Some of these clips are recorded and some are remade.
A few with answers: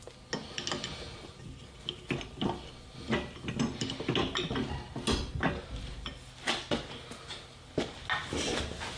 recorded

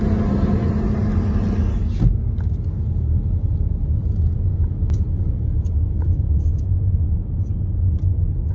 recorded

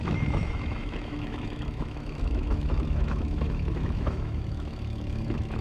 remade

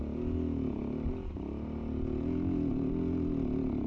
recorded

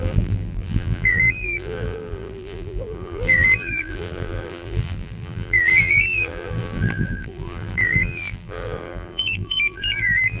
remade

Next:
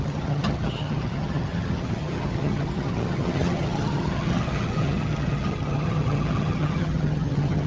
remade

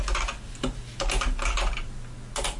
recorded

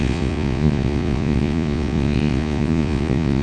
remade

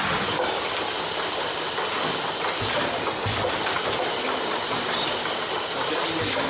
recorded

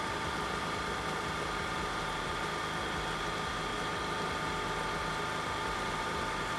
recorded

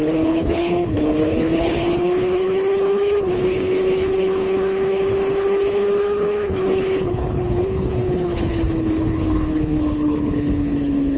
remade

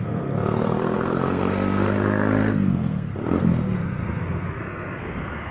remade